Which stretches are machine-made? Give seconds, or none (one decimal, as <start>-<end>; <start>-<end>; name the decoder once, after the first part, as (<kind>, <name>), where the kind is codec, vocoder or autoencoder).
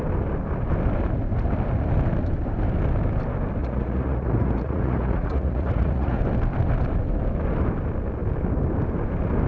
3.6-6.2 (vocoder, Vocos)